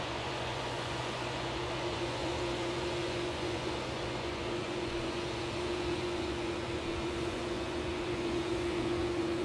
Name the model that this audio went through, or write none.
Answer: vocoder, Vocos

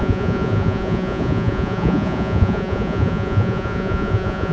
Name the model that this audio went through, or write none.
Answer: vocoder, Vocos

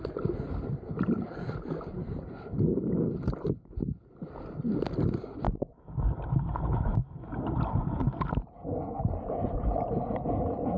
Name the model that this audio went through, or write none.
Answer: none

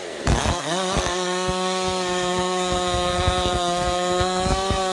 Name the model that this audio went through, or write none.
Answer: codec, SNAC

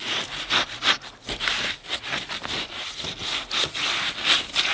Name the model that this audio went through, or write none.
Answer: none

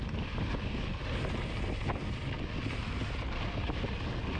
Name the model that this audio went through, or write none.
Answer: none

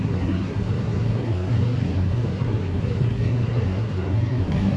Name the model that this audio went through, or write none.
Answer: codec, SNAC